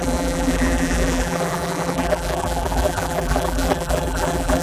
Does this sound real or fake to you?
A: fake